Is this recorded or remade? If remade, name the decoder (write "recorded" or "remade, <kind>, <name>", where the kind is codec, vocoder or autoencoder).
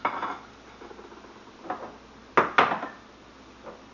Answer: recorded